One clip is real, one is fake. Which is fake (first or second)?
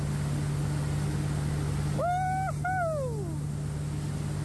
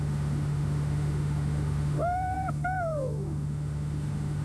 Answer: second